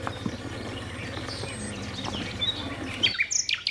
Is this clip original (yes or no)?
yes